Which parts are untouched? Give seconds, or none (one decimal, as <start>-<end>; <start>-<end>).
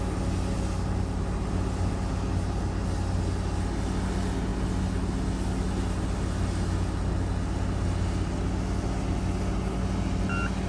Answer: 0.0-10.7